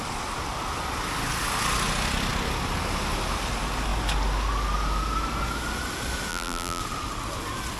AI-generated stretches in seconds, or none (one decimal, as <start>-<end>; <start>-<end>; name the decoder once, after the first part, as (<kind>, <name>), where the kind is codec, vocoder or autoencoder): 6.3-6.8 (vocoder, BigVGAN v2)